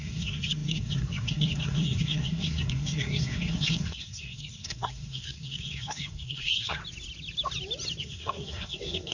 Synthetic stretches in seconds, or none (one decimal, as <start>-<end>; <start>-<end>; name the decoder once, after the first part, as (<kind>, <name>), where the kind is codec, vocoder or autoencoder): 0.0-6.8 (codec, SNAC); 8.0-9.1